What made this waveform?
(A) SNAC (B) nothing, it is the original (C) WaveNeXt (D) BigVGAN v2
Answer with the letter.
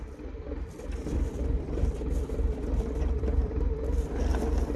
B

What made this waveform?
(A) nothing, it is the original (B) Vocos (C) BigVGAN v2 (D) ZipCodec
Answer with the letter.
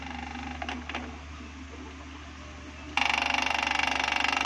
A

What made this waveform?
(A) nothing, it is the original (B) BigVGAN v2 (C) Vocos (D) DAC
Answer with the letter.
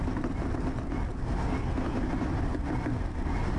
A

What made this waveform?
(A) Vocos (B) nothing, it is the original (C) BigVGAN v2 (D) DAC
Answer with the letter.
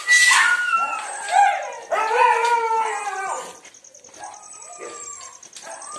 B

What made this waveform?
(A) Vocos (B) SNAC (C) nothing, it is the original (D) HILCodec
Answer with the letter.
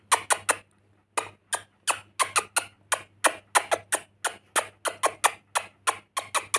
C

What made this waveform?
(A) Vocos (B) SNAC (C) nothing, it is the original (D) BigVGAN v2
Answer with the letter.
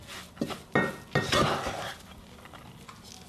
C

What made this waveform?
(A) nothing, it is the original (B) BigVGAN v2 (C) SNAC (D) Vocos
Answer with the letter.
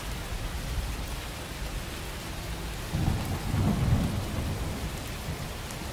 A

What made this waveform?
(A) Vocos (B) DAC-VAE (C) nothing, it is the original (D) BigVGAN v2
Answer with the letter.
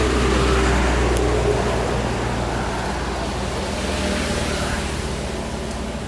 C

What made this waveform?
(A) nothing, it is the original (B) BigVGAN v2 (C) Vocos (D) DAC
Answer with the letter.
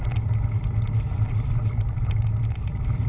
A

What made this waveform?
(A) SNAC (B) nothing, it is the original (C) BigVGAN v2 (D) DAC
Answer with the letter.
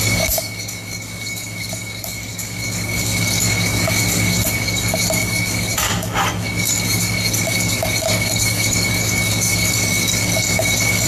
D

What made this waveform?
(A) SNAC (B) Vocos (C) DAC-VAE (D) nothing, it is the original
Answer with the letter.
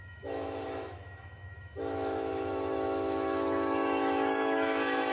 C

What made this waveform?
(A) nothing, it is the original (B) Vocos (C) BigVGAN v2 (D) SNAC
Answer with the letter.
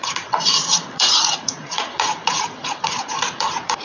B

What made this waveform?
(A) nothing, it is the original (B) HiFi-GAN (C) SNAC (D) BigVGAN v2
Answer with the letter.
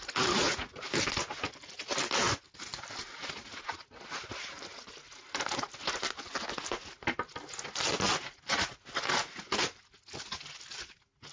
A